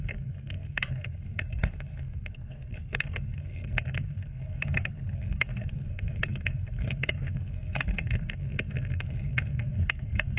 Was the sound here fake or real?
fake